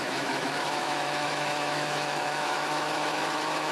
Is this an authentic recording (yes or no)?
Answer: no